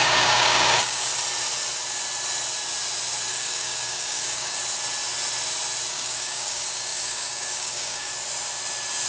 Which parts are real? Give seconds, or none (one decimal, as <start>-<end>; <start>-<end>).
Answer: 1.1-3.3; 4.6-5.9; 8.1-9.1